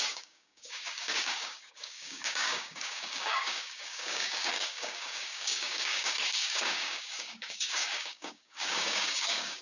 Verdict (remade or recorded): remade